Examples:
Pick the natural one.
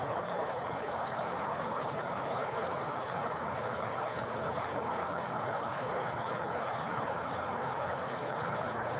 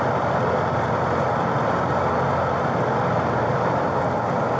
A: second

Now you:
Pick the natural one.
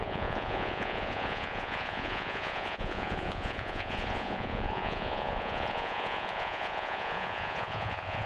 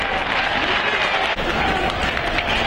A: second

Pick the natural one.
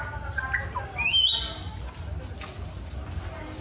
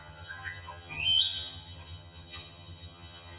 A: first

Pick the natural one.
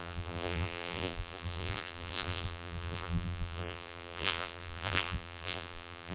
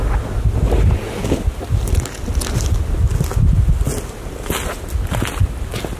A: second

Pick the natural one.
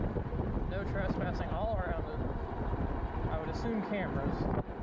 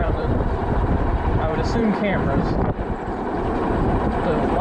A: first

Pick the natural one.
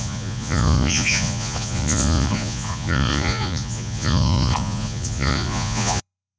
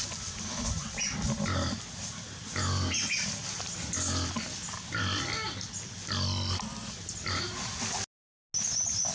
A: second